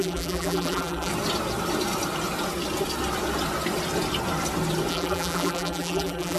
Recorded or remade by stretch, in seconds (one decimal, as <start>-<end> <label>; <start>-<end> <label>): 0.0-1.1 remade; 1.1-4.9 recorded; 4.9-6.4 remade